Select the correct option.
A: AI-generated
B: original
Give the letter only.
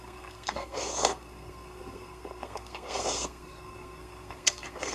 A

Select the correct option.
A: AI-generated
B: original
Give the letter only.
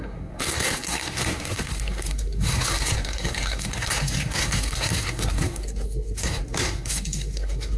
A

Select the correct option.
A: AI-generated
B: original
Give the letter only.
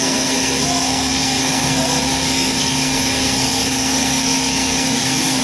A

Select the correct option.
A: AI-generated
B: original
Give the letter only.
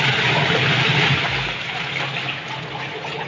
B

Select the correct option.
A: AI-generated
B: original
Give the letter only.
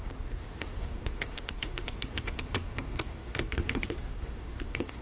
A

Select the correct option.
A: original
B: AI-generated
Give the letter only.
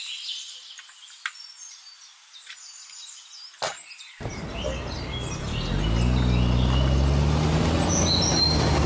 A